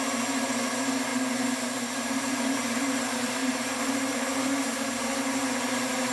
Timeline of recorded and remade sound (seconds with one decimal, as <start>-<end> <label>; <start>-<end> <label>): 0.0-6.1 remade